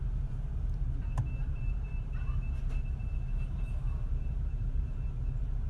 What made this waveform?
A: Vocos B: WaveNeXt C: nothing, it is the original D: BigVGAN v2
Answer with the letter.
D